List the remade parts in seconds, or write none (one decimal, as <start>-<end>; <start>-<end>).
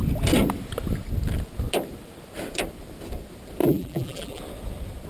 3.6-4.4